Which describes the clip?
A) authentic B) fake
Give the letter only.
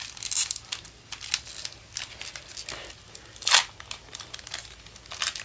A